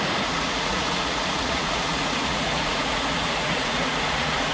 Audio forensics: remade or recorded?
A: remade